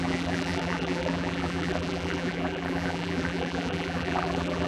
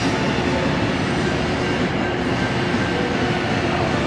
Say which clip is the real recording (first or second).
second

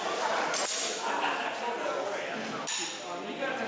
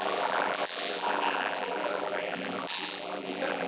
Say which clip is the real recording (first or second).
first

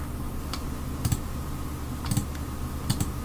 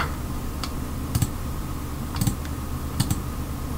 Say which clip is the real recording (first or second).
first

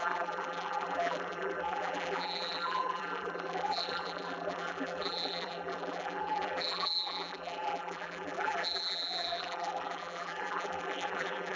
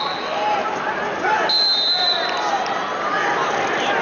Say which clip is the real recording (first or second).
second